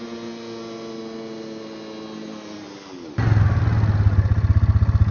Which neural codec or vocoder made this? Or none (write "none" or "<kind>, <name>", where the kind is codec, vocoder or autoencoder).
none